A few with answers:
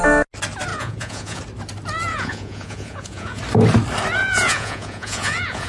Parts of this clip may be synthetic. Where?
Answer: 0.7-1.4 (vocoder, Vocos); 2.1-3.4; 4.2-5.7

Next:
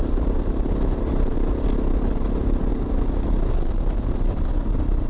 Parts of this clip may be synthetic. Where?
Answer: none

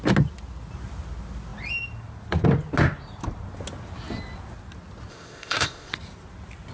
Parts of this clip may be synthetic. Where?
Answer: 5.1-5.9 (codec, ZipCodec)

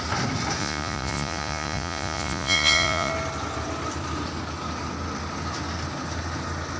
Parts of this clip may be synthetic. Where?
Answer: 0.6-3.1 (vocoder, Vocos)